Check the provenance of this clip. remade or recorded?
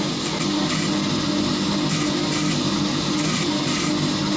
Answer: recorded